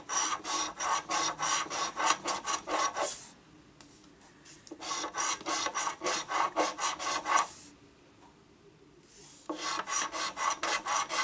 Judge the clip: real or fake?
real